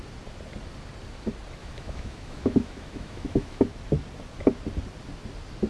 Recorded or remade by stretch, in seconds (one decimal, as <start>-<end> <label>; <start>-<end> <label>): 0.0-1.6 recorded; 1.6-3.6 remade; 3.6-5.7 recorded